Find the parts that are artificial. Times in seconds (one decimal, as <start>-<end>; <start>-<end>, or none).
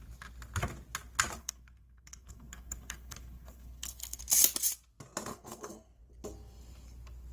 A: 1.4-4.2; 5.3-6.0